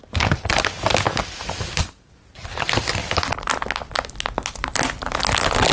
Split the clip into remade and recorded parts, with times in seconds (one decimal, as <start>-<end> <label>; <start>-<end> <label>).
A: 0.0-5.7 recorded